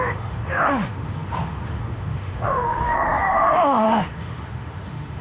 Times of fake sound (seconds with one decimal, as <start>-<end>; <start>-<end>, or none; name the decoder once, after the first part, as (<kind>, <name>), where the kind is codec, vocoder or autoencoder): 0.0-5.2 (autoencoder, DAC-VAE)